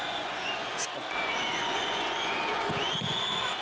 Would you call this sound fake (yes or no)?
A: yes